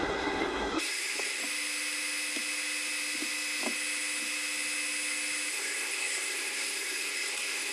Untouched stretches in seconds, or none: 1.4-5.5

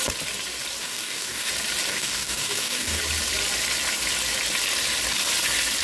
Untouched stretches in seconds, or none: 0.0-0.8; 1.5-1.9; 3.0-5.8

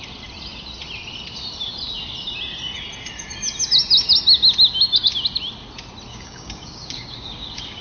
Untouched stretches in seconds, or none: 0.0-6.1

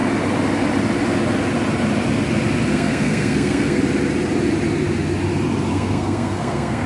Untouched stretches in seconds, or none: 0.0-2.7; 3.8-5.7